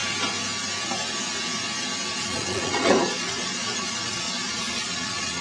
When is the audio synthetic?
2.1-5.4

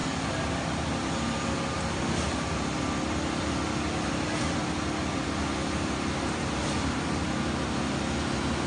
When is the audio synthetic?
none